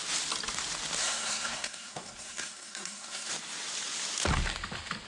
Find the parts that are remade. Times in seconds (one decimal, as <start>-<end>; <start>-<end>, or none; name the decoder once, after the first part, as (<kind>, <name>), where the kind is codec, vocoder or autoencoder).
1.0-3.3 (codec, SNAC)

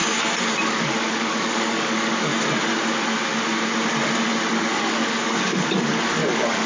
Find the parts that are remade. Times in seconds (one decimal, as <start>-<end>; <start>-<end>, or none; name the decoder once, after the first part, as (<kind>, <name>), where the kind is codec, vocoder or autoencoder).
0.6-2.3 (codec, DAC); 4.5-6.7

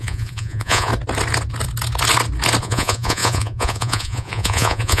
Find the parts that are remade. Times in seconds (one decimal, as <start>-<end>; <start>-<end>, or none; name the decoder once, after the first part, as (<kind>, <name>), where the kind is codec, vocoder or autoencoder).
0.0-0.9 (vocoder, Vocos); 2.6-5.0

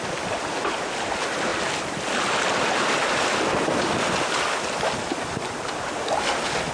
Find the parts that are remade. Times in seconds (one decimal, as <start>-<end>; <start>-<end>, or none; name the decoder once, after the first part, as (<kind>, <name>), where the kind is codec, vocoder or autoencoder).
none

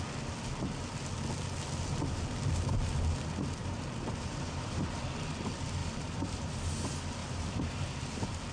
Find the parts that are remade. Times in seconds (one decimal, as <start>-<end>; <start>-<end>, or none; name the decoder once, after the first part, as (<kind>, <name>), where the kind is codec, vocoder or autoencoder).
3.6-5.0 (vocoder, BigVGAN v2); 5.8-6.8; 7.2-8.0

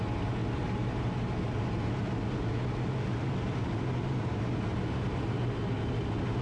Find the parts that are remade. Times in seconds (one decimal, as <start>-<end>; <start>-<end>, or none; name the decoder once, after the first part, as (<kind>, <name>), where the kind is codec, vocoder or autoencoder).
none

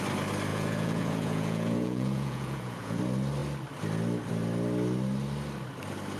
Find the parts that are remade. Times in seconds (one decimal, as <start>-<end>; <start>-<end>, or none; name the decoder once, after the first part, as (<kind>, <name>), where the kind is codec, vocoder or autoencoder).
0.5-3.0 (vocoder, Vocos)